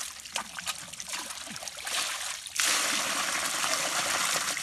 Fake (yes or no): no